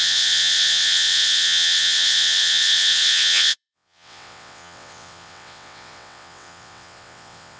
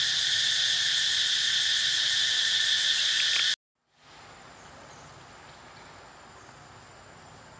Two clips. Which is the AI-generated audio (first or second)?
first